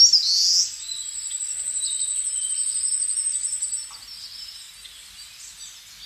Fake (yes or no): no